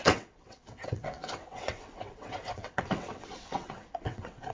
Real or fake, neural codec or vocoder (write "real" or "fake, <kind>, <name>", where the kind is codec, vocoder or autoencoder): fake, vocoder, WaveNeXt